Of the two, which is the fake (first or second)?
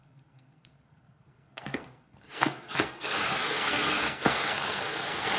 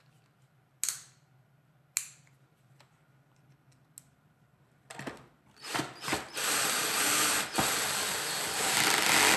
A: first